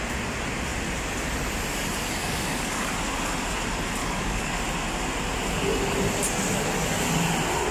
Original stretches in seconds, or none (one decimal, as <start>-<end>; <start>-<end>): 0.0-2.2; 2.9-4.0; 4.6-7.7